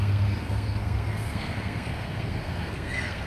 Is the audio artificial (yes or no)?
yes